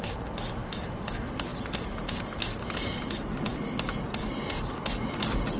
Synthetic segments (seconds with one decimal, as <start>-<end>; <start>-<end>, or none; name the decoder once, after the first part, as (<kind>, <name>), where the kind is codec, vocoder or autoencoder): 0.6-1.1 (vocoder, BigVGAN v2)